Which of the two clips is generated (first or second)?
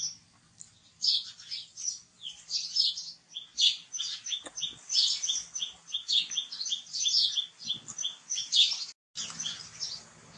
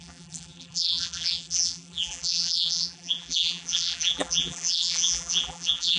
second